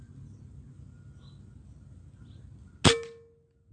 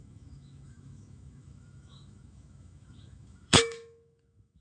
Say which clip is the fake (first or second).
second